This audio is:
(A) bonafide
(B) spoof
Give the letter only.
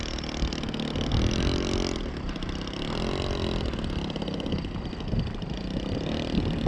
A